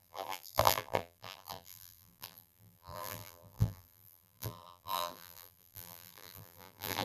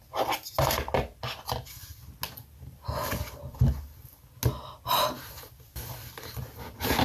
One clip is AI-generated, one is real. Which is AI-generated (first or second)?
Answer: first